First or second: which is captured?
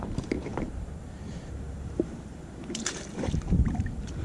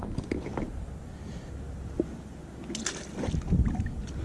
second